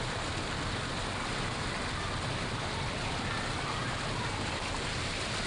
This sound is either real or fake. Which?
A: real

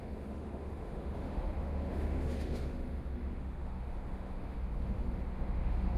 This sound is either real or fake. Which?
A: fake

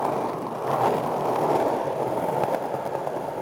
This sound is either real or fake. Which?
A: real